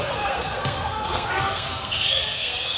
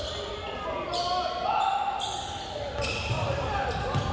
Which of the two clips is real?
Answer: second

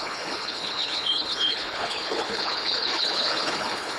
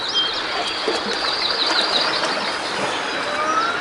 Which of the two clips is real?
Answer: second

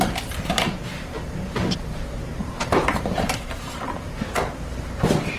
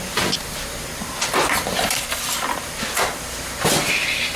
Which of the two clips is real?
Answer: second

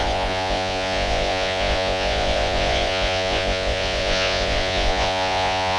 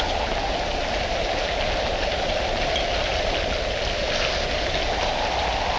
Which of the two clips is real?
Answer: second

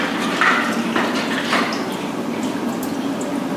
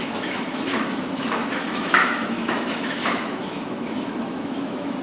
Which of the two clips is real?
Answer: first